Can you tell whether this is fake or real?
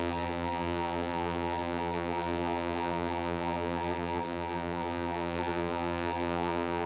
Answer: fake